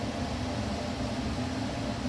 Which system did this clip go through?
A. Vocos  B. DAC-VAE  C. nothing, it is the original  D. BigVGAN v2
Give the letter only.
C